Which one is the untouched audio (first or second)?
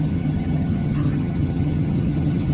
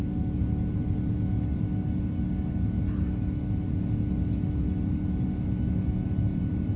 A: second